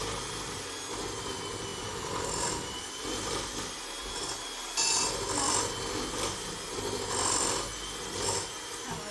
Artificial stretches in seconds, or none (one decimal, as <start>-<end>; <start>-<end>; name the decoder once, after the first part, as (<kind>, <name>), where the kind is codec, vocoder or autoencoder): 1.7-3.8 (vocoder, BigVGAN v2)